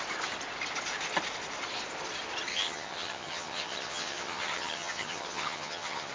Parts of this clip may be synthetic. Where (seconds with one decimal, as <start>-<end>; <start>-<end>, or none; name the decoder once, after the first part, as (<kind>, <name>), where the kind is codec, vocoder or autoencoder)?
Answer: 2.5-6.1 (vocoder, HiFi-GAN)